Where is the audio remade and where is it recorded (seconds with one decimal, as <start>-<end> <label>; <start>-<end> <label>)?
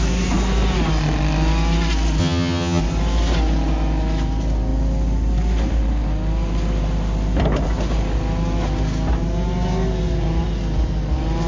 0.0-2.2 recorded; 2.2-2.8 remade; 2.8-11.5 recorded